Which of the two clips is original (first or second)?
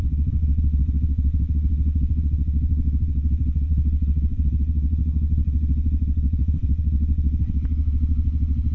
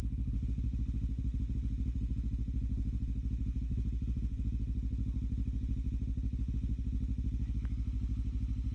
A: second